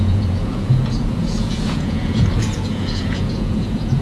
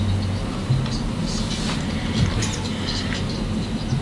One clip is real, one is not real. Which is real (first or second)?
second